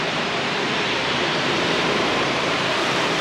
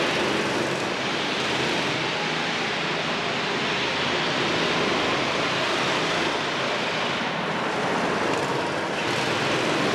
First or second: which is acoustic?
second